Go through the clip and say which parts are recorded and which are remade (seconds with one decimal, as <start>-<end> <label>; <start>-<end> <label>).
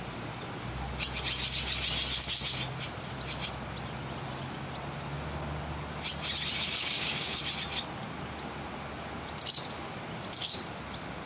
0.0-6.7 recorded; 6.7-7.4 remade; 7.4-11.3 recorded